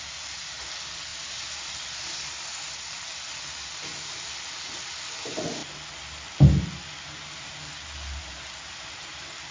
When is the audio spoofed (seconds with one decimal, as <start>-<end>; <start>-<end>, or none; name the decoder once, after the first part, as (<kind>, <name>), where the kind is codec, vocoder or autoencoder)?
none